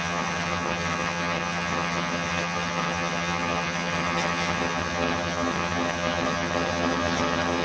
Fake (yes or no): yes